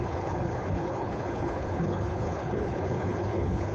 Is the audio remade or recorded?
remade